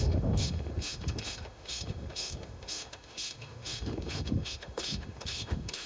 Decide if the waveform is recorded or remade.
remade